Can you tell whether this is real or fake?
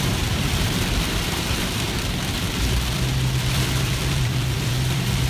fake